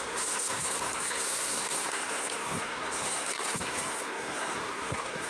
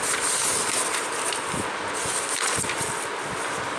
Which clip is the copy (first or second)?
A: first